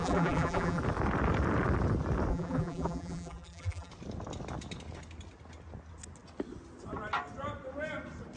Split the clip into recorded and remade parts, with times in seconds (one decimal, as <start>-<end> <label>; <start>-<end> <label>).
0.0-0.8 remade; 0.8-2.3 recorded; 2.3-3.9 remade; 3.9-8.4 recorded